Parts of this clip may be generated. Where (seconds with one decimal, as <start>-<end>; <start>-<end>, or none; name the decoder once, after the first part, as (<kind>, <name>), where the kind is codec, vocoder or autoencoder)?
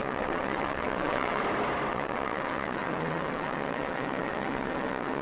0.0-1.4 (vocoder, WaveNeXt); 1.9-5.2